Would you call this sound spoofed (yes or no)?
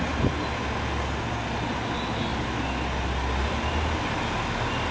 no